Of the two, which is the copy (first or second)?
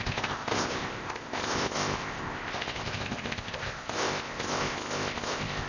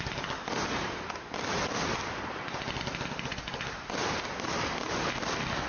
first